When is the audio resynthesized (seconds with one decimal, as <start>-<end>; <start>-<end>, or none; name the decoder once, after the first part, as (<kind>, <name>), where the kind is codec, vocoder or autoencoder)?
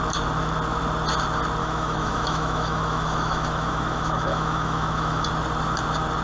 1.6-5.3 (autoencoder, DAC-VAE)